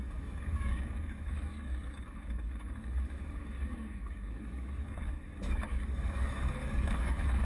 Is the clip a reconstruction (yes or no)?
yes